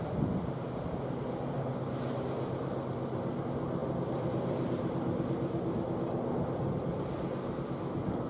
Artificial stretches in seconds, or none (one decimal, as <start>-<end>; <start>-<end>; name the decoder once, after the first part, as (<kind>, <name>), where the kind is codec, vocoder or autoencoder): 3.8-5.2 (vocoder, BigVGAN v2)